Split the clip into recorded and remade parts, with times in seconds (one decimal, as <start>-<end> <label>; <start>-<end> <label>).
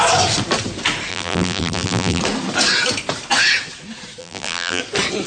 0.0-1.1 recorded; 1.1-2.2 remade; 2.2-4.2 recorded; 4.2-4.8 remade; 4.8-5.3 recorded